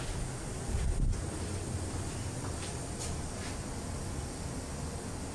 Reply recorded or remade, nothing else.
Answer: recorded